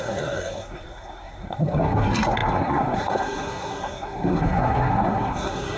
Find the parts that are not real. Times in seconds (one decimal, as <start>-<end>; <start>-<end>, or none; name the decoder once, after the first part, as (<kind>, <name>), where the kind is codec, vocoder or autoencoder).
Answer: 0.0-5.8 (codec, SNAC)